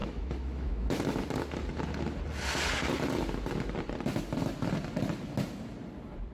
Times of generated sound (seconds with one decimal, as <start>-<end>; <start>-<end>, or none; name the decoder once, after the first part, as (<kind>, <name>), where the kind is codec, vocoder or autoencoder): 0.0-1.0 (autoencoder, DAC-VAE)